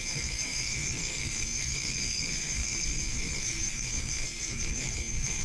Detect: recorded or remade remade